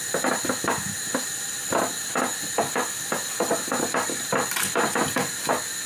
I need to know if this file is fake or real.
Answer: real